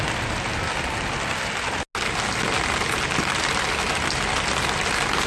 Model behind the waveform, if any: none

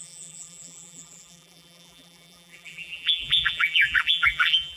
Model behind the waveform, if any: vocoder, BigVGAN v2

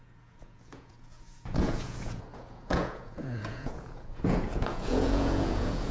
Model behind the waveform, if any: vocoder, Vocos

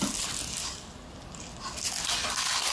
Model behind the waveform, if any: none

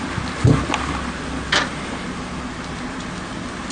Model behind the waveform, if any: none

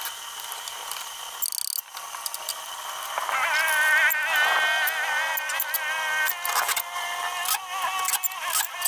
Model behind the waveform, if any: none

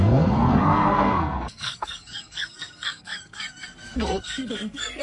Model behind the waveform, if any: codec, SNAC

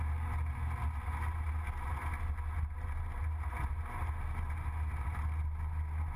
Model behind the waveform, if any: none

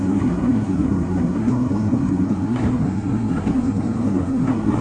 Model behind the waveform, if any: codec, SNAC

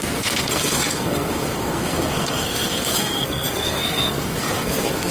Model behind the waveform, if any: codec, SNAC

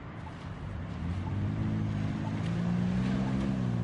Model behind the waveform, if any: none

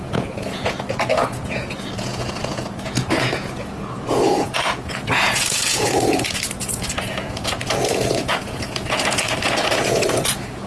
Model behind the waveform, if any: vocoder, Vocos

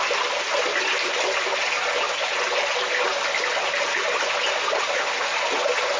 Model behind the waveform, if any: none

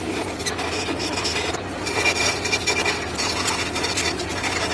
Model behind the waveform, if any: none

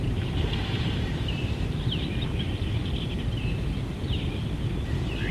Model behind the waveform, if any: vocoder, BigVGAN v2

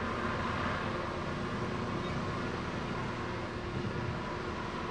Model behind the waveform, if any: none